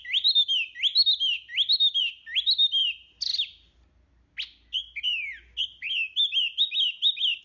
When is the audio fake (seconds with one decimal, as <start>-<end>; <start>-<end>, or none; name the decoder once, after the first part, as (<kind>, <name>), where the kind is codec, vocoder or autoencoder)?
none

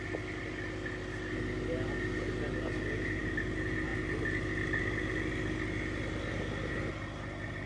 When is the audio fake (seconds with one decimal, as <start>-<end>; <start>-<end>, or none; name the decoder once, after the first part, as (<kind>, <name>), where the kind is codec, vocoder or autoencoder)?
none